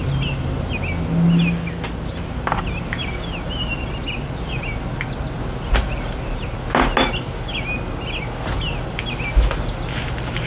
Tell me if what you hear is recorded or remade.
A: recorded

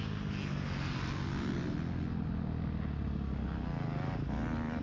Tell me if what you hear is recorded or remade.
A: recorded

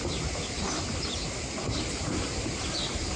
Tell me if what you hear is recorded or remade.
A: recorded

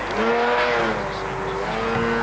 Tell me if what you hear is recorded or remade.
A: recorded